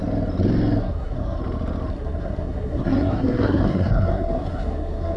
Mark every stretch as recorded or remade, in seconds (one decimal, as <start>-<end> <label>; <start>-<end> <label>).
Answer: 0.0-0.8 recorded; 0.8-1.4 remade; 1.4-1.9 recorded; 1.9-5.2 remade